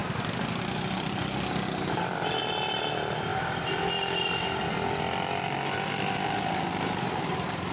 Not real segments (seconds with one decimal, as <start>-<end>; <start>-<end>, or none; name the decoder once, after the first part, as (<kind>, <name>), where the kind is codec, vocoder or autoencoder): 0.6-7.7 (vocoder, BigVGAN v2)